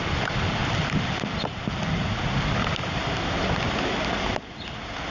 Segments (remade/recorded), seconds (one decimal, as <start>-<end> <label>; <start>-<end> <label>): 0.0-5.1 recorded